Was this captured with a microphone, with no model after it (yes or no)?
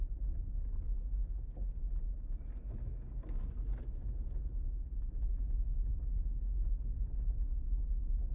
yes